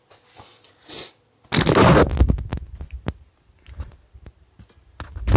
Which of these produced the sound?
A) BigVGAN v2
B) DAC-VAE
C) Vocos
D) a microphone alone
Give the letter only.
D